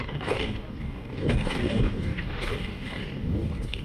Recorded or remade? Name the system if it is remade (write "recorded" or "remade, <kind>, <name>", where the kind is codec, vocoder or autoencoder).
remade, codec, DAC